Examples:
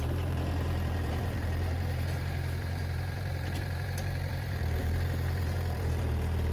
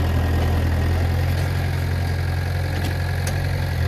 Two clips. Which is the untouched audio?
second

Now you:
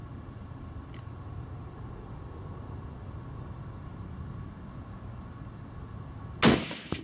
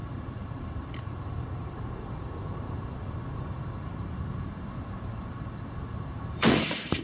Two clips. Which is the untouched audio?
first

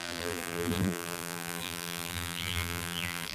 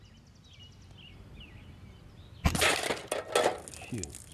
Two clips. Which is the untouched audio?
second